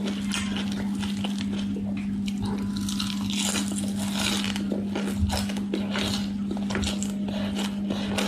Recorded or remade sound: recorded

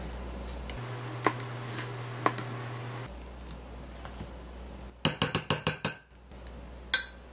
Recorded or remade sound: recorded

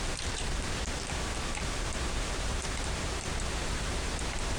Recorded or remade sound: remade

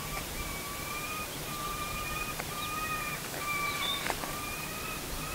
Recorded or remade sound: remade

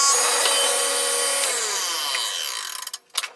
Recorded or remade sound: recorded